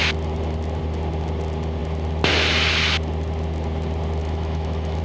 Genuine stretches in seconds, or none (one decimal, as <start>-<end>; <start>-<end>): 0.0-4.2